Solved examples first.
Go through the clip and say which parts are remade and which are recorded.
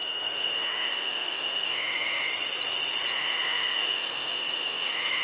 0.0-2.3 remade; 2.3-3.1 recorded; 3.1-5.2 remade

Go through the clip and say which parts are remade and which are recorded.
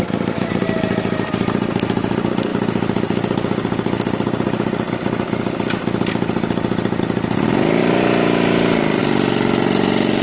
0.0-10.2 recorded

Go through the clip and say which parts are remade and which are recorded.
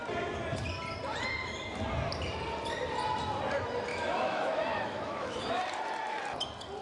0.0-3.9 recorded; 3.9-5.6 remade; 5.6-6.8 recorded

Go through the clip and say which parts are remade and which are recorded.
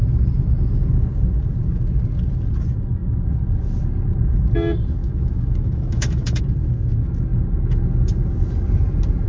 0.0-5.0 recorded; 5.0-6.4 remade; 6.4-9.3 recorded